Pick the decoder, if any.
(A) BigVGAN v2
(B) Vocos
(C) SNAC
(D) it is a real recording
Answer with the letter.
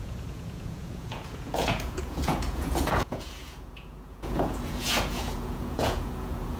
B